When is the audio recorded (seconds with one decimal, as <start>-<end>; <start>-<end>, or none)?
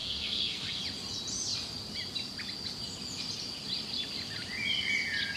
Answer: 0.8-5.4